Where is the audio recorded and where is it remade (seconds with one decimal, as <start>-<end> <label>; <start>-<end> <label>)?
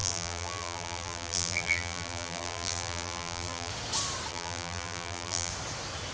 0.0-3.7 remade; 3.7-4.3 recorded; 4.3-5.5 remade; 5.5-6.1 recorded